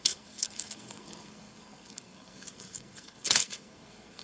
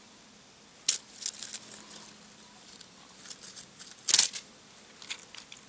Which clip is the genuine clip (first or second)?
second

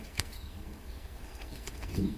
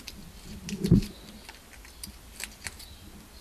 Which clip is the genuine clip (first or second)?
second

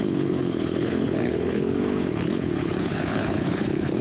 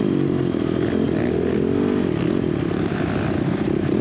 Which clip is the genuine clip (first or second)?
second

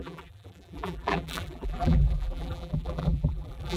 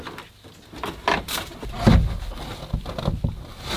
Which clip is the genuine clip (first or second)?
second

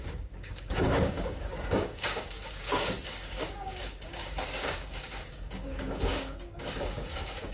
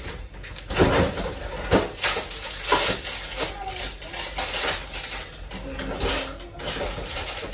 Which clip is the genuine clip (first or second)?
second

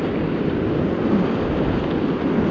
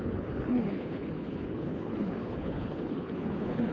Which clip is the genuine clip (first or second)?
first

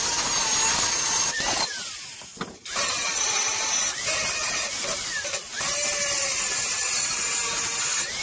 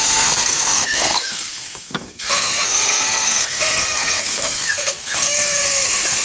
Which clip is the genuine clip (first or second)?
first